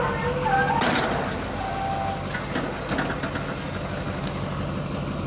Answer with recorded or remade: recorded